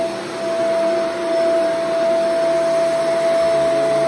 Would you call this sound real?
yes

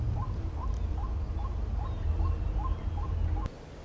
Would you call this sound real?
yes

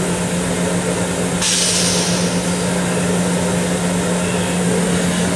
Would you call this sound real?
yes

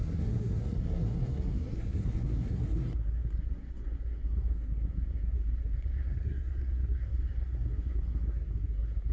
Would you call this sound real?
no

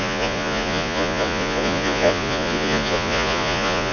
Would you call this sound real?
no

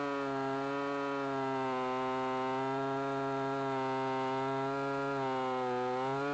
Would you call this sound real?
yes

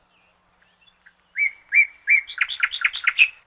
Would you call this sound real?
yes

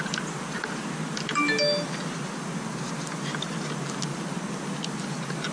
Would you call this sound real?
yes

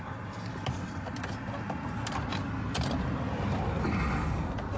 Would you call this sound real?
yes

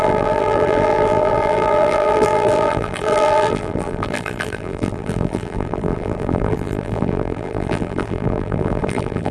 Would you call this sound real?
no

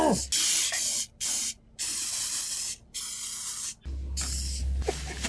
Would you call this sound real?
yes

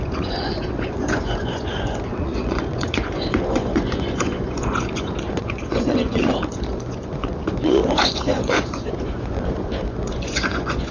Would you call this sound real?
no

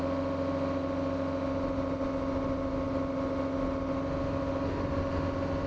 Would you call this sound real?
yes